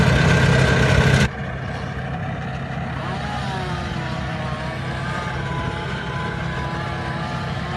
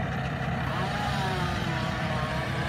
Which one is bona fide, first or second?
first